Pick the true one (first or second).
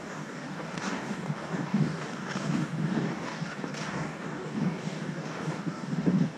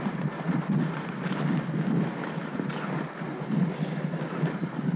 second